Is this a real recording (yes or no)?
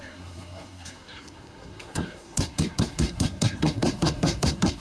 no